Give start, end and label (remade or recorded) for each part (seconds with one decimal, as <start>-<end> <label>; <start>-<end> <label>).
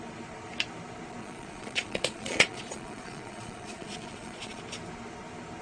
0.0-1.2 recorded; 1.2-4.6 remade; 4.6-5.6 recorded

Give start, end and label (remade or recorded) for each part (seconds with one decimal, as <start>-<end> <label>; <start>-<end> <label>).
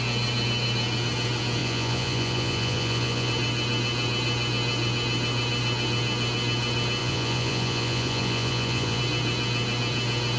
0.0-1.6 recorded; 1.6-3.3 remade; 3.3-7.0 recorded; 7.0-9.0 remade; 9.0-10.4 recorded